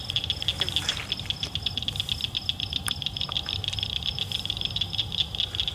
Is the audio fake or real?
real